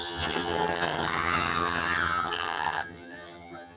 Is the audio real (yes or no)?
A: no